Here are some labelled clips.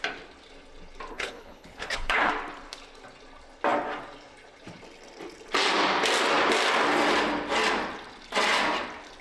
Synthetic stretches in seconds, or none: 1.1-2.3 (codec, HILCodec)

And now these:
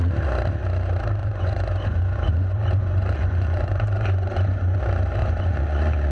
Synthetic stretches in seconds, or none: 1.2-4.8 (vocoder, Vocos); 5.2-6.1

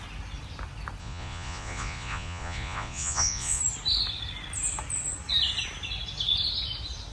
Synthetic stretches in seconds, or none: 1.0-3.6 (vocoder, Vocos)

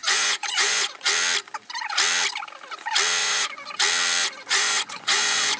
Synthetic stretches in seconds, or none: 0.0-1.1 (vocoder, Vocos); 3.2-3.7; 4.2-5.6

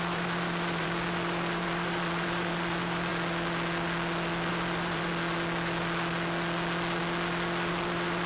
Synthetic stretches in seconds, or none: 0.0-3.1 (vocoder, BigVGAN v2); 4.5-5.1; 7.7-8.3

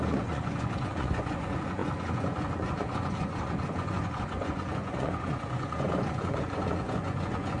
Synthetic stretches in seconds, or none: 0.0-7.6 (vocoder, Vocos)

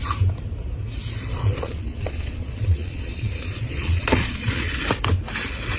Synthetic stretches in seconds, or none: 1.3-4.8 (vocoder, Vocos)